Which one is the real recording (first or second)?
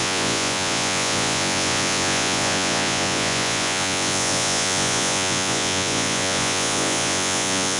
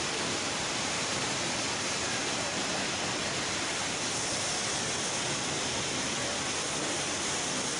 second